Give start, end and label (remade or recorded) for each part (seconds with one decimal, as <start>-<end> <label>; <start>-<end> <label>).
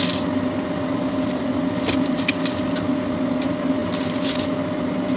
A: 0.0-5.2 recorded